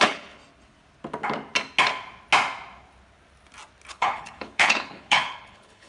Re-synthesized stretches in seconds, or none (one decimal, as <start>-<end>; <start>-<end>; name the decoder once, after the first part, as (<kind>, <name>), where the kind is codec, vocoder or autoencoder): 0.0-0.4 (codec, HILCodec); 3.9-5.9